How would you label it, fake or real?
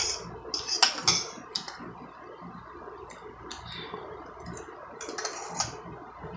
real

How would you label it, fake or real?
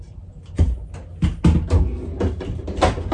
real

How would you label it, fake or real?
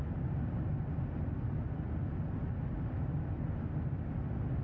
real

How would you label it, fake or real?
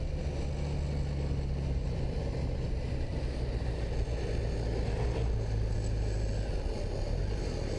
real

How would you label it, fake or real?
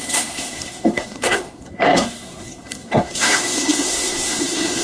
fake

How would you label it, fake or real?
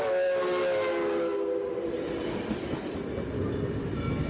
real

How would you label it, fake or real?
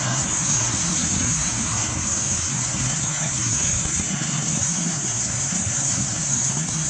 fake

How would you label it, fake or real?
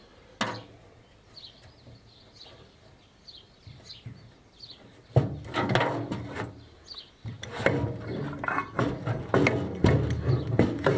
real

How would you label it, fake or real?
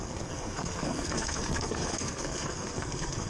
fake